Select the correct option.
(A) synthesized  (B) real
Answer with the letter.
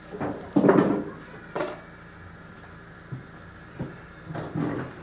B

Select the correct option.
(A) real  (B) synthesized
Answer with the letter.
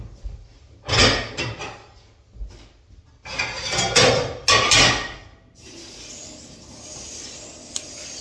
A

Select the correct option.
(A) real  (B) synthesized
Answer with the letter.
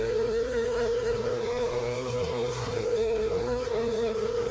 B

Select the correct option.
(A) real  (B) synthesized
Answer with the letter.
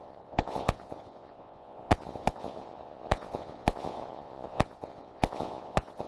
B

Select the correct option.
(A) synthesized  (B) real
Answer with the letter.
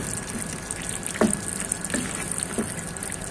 B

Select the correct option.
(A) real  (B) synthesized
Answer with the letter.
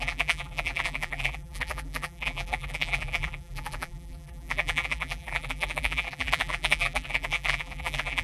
B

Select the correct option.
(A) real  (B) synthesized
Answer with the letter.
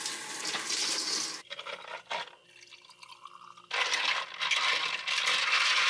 A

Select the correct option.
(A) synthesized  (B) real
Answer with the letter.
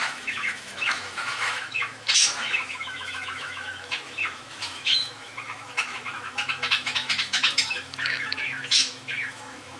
A